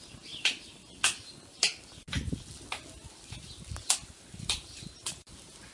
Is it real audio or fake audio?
real